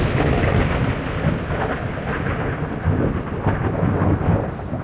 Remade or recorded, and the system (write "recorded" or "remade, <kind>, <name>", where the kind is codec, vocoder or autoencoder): recorded